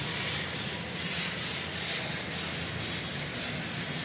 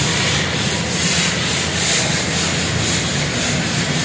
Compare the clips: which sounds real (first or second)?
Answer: first